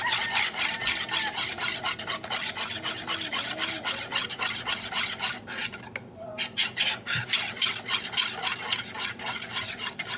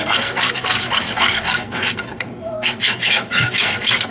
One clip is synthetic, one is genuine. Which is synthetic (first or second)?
second